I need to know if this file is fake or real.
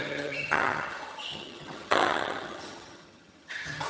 fake